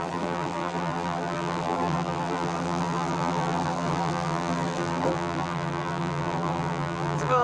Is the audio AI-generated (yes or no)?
yes